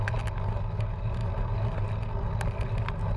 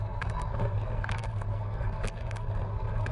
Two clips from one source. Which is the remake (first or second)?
second